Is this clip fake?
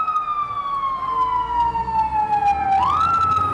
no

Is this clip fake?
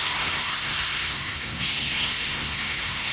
yes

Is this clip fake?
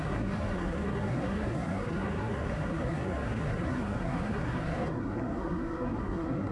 yes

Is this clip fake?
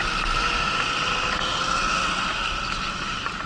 no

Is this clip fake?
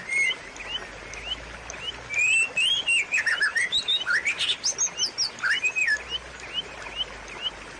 no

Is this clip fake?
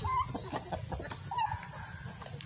no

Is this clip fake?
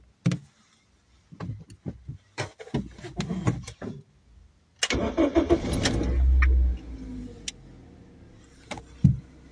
no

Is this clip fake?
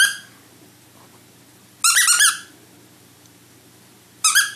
no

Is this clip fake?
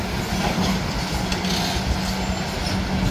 no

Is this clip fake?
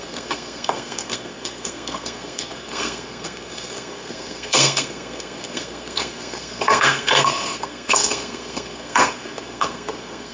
yes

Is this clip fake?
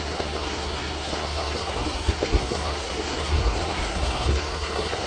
yes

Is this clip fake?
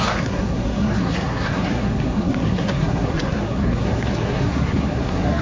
yes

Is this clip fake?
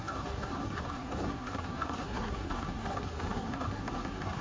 yes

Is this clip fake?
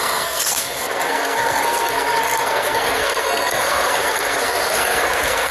yes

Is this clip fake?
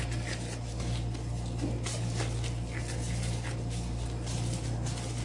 no